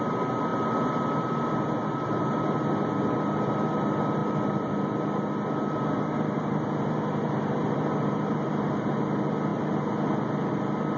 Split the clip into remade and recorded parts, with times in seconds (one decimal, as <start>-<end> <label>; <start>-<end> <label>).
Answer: 0.0-0.5 recorded; 0.5-3.0 remade; 3.0-4.2 recorded; 4.2-5.2 remade; 5.2-11.0 recorded